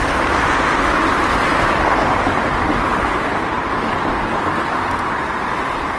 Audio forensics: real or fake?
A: real